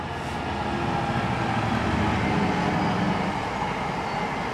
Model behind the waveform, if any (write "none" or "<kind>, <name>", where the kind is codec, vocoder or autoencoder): none